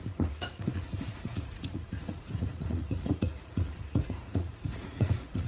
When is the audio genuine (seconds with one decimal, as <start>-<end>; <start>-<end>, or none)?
none